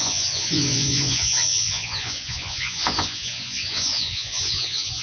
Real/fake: fake